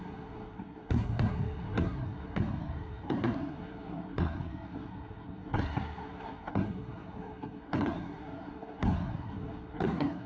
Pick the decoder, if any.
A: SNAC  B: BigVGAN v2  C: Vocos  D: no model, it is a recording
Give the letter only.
A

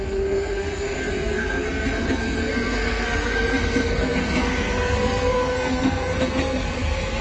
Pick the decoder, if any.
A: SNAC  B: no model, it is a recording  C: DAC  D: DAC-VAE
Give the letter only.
A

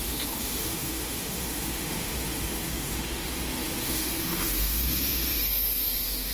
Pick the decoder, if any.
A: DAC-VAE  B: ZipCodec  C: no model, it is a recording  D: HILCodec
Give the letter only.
A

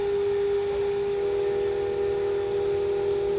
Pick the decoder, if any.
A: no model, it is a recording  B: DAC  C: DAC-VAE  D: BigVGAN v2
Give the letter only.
A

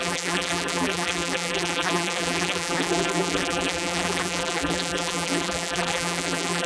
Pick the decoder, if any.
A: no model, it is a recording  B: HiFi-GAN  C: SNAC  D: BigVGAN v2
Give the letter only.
D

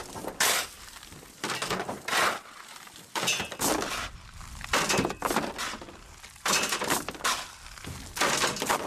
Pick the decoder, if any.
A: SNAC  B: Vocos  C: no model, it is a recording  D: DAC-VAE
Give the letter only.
C